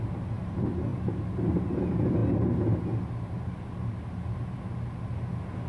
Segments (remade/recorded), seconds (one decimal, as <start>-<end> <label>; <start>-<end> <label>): 0.0-5.7 recorded